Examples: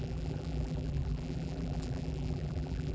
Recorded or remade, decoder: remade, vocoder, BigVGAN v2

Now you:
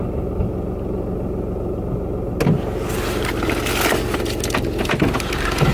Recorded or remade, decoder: recorded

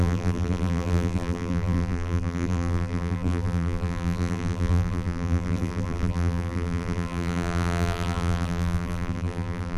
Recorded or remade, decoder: remade, vocoder, BigVGAN v2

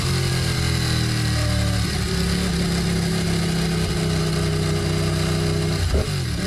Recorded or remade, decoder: recorded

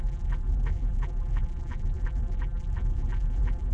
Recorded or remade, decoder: remade, vocoder, BigVGAN v2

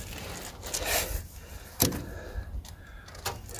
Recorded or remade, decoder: recorded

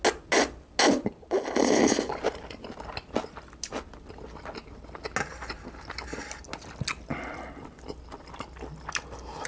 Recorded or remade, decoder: recorded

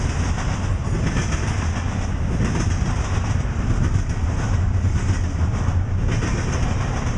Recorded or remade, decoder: recorded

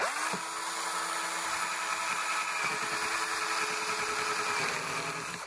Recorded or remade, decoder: recorded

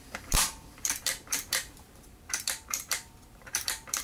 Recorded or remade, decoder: remade, vocoder, BigVGAN v2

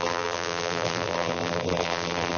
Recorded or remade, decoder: remade, vocoder, BigVGAN v2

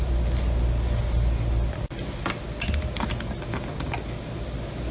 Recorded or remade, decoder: recorded